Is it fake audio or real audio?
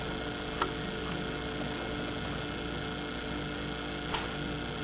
real